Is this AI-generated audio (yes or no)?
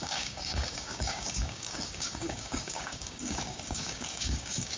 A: yes